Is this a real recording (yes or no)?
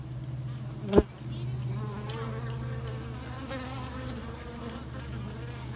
yes